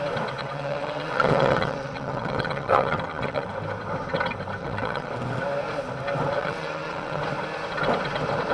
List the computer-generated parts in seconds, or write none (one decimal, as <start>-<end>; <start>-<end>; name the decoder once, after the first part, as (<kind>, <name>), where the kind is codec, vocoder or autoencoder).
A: 0.4-3.5 (vocoder, WaveNeXt); 4.6-5.1; 6.4-7.2